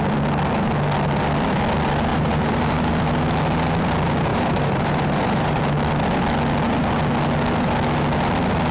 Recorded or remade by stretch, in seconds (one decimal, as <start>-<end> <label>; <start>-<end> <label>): 0.0-2.1 recorded; 2.1-2.9 remade; 2.9-4.3 recorded; 4.3-5.6 remade; 5.6-8.7 recorded